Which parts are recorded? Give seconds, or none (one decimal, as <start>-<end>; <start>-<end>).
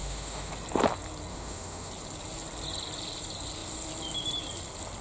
0.5-1.3; 1.9-5.0